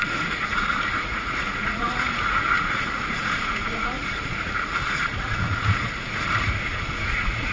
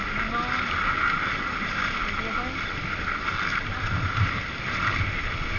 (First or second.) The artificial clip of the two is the first